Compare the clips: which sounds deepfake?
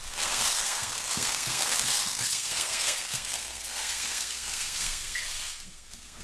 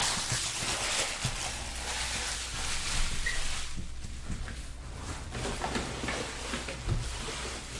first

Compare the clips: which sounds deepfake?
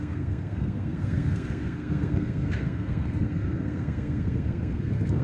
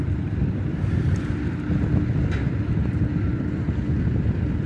first